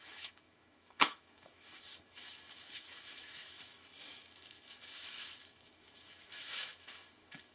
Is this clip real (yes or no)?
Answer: no